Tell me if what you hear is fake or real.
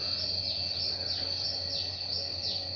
real